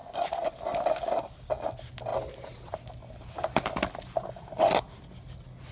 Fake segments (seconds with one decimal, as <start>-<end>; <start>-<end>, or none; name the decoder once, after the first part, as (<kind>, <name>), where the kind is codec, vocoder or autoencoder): 0.0-0.5 (vocoder, Vocos)